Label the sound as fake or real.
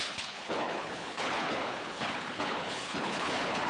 fake